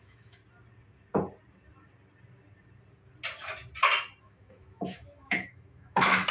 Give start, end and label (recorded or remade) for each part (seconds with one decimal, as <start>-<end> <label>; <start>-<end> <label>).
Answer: 0.0-0.4 remade; 0.4-4.2 recorded; 4.2-6.3 remade